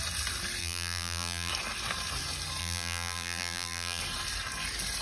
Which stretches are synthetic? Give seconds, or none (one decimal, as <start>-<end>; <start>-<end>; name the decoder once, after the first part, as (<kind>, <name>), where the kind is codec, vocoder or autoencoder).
0.6-1.5 (vocoder, BigVGAN v2); 2.6-4.0